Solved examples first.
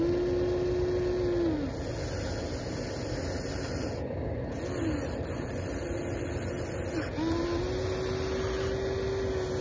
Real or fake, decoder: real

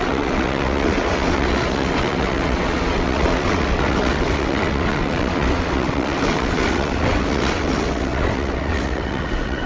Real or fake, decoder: fake, vocoder, WaveNeXt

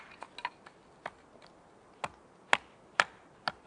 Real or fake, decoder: real